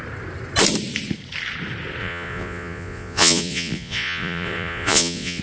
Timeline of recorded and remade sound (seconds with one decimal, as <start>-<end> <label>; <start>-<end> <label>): 0.0-2.0 recorded; 2.0-5.4 remade